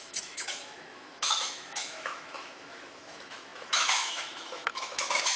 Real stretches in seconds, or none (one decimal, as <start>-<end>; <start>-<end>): none